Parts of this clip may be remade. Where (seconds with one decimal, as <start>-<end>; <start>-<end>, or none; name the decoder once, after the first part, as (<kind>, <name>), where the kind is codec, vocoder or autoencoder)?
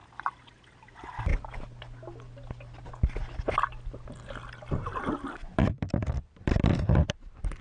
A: 0.0-1.3 (vocoder, BigVGAN v2); 5.4-7.6